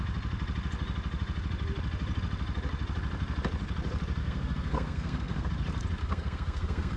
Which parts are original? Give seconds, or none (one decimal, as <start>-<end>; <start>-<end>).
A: 0.0-4.2; 5.5-6.0